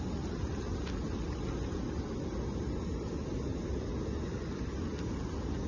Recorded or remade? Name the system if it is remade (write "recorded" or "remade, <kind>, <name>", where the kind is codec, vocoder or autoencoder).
recorded